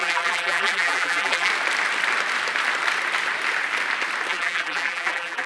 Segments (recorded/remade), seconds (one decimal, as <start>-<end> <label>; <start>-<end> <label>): 0.0-1.5 remade; 1.5-4.3 recorded; 4.3-5.5 remade